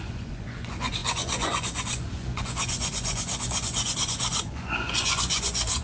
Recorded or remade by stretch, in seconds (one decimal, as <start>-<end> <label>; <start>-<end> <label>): 0.0-5.8 remade